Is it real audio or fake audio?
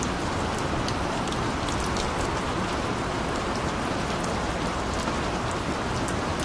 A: real